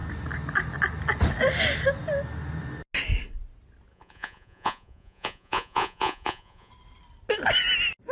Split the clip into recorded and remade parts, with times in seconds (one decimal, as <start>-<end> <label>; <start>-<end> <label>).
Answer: 0.0-3.9 recorded; 3.9-6.7 remade; 6.7-8.1 recorded